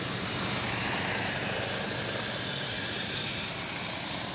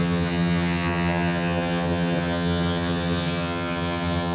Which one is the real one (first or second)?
first